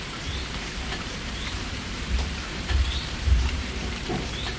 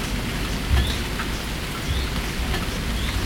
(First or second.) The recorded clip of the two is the second